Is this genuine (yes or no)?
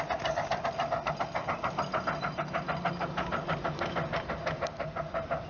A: yes